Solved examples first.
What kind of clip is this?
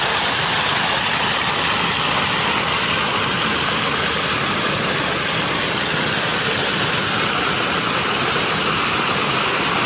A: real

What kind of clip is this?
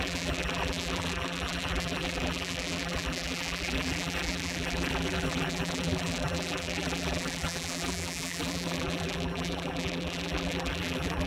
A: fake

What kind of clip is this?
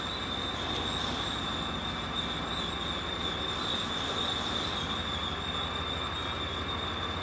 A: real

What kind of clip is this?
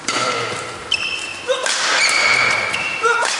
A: real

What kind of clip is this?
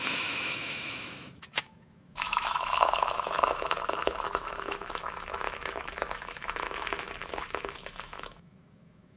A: fake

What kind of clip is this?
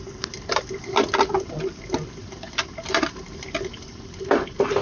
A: real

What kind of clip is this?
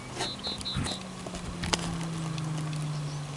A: real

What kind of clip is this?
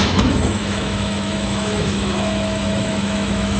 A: fake